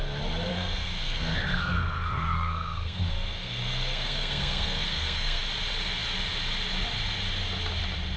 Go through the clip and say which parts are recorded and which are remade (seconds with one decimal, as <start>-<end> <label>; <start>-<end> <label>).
0.0-0.5 recorded; 0.5-5.4 remade; 5.4-8.2 recorded